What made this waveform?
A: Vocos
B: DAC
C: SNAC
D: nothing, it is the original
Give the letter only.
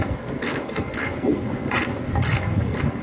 C